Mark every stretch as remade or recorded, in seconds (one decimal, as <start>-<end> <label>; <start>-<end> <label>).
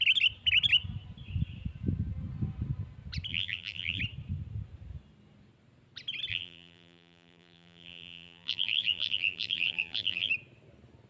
0.0-3.3 recorded; 3.3-4.0 remade; 4.0-6.3 recorded; 6.3-10.3 remade; 10.3-11.1 recorded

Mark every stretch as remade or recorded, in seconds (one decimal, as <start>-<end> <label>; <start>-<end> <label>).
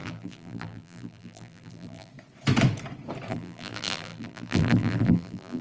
0.0-2.1 remade; 2.1-3.3 recorded; 3.3-5.6 remade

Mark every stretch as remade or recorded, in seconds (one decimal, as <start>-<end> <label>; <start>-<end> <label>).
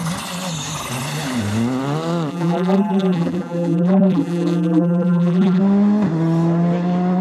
0.0-2.3 recorded; 2.3-5.6 remade; 5.6-7.2 recorded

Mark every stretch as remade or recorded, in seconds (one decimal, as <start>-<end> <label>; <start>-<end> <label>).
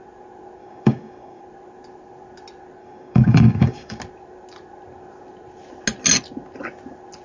0.0-0.6 recorded; 0.6-1.4 remade; 1.4-2.8 recorded; 2.8-4.0 remade; 4.0-7.2 recorded